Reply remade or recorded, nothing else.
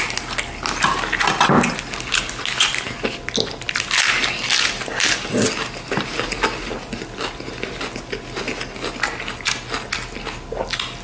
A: recorded